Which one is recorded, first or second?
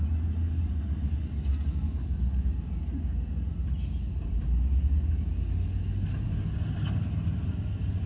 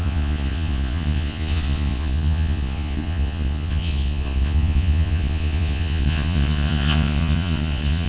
first